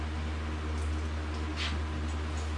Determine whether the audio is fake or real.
real